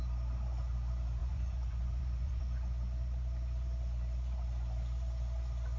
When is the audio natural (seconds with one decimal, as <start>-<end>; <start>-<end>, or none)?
0.0-1.2; 2.4-5.8